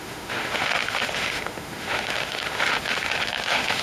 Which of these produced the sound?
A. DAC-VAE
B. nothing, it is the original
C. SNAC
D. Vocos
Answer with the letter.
A